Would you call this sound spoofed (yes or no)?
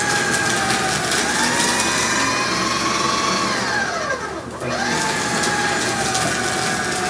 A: no